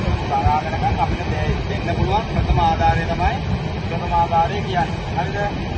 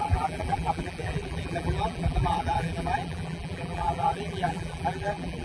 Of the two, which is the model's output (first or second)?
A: second